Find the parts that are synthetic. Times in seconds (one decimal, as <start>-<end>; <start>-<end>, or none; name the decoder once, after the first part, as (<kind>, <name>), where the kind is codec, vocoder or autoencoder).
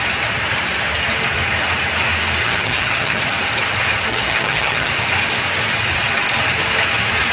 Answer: 2.4-3.2 (vocoder, HiFi-GAN); 4.1-4.9